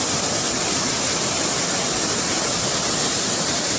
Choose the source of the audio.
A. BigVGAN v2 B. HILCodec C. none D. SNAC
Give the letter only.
C